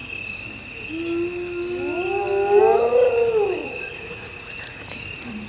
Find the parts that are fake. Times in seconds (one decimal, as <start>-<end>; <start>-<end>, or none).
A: 3.6-4.8